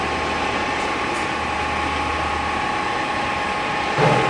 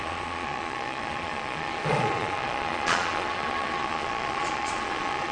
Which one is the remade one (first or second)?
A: second